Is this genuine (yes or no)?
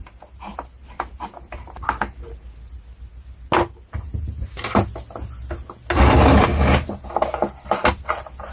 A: yes